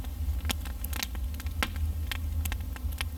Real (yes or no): yes